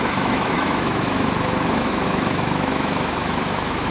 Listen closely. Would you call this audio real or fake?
fake